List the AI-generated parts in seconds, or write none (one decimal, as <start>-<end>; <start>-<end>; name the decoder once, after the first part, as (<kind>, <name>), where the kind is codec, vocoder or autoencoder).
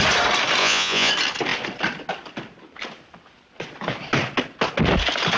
0.6-1.1 (vocoder, Vocos)